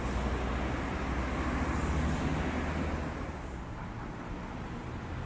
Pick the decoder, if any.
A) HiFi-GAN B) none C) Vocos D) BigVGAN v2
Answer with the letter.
B